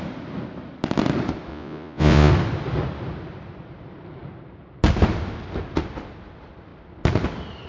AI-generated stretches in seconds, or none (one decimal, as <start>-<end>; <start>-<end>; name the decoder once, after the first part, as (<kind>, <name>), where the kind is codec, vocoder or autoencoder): 1.5-2.3 (vocoder, Vocos)